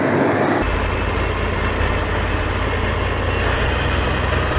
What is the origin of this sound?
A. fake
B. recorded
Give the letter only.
B